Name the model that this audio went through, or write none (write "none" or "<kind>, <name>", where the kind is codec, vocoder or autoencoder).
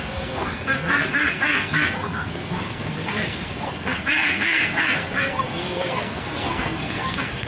codec, SNAC